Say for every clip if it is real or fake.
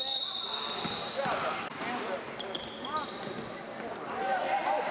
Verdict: real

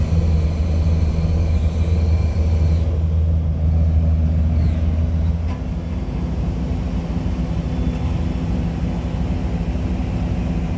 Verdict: real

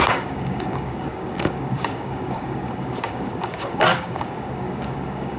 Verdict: fake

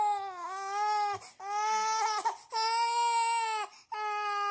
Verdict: real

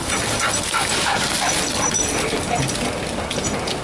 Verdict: real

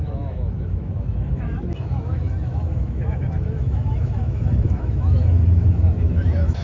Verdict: fake